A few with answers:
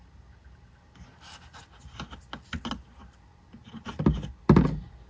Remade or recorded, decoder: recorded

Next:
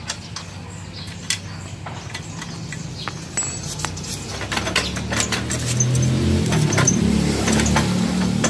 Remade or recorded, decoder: recorded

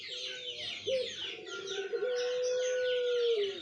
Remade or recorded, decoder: recorded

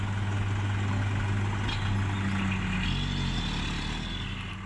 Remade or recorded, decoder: recorded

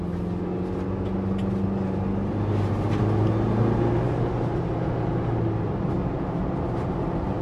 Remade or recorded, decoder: recorded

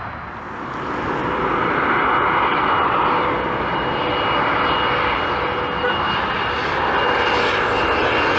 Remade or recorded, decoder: recorded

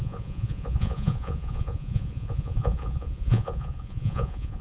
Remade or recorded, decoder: remade, vocoder, Vocos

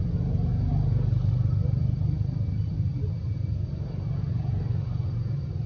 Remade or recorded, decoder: recorded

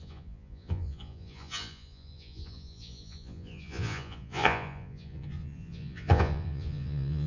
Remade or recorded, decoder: remade, vocoder, Vocos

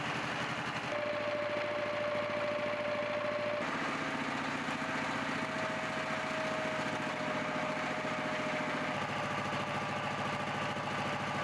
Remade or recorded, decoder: recorded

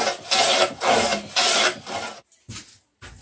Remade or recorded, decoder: recorded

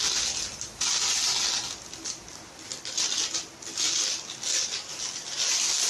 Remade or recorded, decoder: recorded